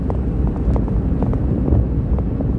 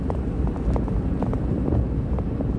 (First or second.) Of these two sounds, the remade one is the second